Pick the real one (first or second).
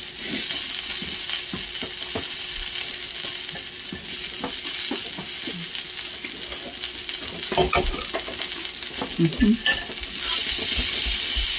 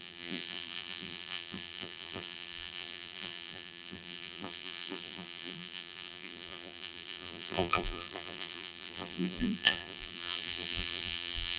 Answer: first